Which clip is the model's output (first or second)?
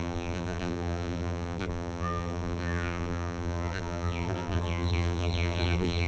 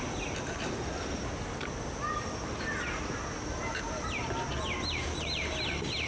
first